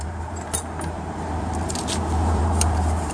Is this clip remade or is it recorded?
remade